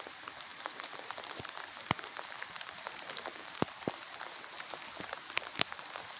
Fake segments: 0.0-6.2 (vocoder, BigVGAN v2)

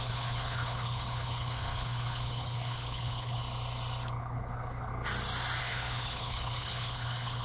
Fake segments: 0.0-3.4 (codec, HILCodec); 4.2-4.9; 5.6-7.4